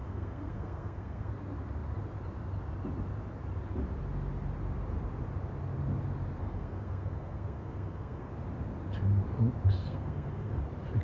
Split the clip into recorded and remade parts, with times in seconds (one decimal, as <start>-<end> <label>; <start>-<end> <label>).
0.0-1.3 remade; 1.3-6.4 recorded; 6.4-8.3 remade; 8.3-9.8 recorded; 9.8-10.6 remade; 10.6-11.0 recorded